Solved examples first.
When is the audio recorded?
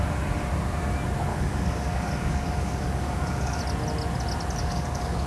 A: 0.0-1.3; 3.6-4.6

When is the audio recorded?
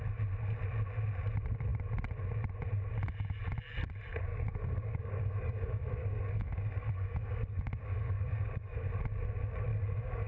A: 0.0-4.3; 8.9-9.7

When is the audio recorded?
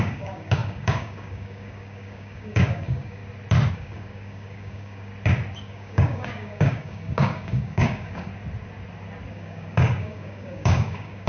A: 3.2-3.7; 5.1-5.6; 8.3-9.3